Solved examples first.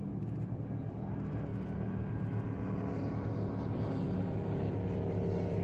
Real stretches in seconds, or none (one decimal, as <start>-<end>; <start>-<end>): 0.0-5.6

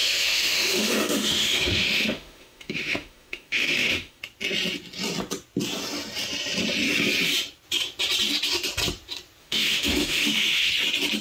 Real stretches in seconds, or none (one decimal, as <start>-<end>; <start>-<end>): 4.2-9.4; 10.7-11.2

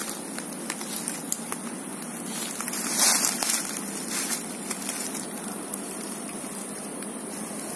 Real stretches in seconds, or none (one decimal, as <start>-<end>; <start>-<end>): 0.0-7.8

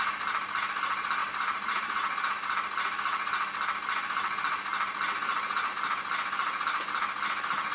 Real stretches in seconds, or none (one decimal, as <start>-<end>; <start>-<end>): 0.0-1.2; 2.3-7.7